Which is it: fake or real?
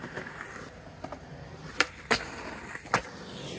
real